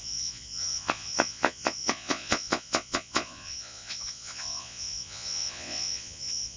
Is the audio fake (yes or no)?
yes